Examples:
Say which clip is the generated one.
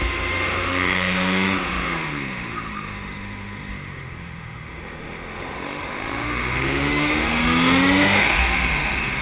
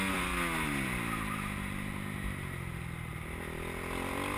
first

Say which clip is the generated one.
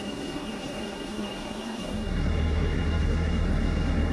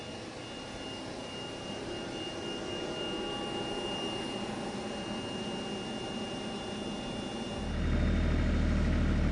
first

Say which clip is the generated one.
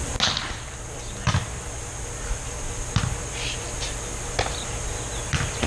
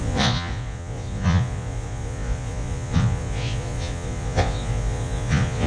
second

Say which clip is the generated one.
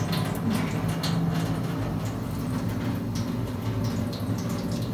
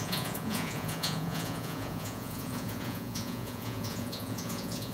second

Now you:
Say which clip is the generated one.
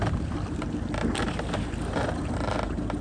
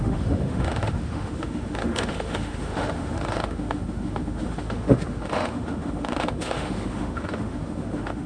second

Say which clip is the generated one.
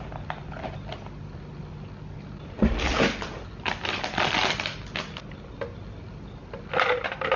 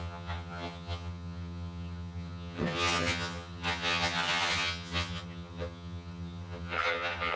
second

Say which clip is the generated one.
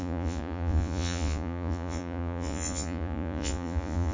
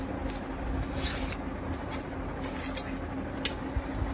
first